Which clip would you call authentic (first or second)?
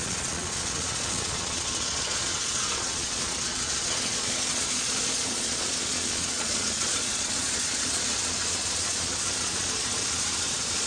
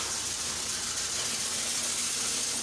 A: second